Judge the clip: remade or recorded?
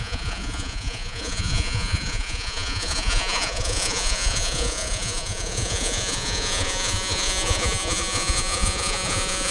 remade